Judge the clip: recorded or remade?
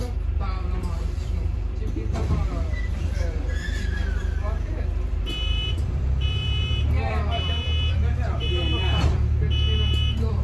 remade